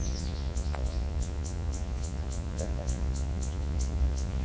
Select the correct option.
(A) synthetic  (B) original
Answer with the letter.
A